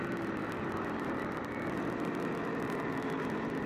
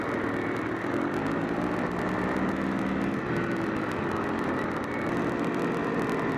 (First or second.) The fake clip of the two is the first